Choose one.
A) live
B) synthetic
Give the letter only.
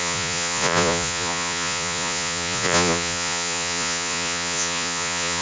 B